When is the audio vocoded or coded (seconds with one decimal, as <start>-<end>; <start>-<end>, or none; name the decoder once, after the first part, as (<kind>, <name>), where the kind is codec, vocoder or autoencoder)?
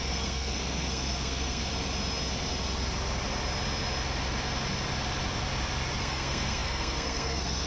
0.0-1.7 (codec, SNAC); 6.0-7.7